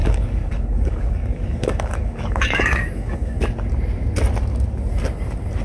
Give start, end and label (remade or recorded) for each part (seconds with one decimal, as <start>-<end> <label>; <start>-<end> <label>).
0.0-3.4 remade; 3.4-5.6 recorded